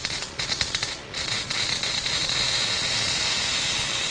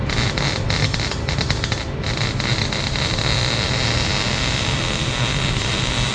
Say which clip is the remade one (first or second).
first